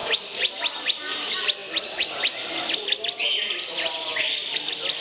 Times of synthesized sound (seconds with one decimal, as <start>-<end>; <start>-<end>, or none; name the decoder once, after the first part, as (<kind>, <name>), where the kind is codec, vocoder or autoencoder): 0.0-5.0 (vocoder, BigVGAN v2)